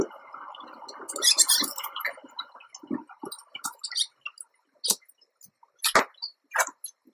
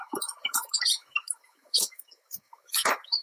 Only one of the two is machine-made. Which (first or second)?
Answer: second